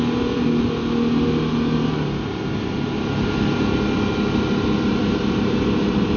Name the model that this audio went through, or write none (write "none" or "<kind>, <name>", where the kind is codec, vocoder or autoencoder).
none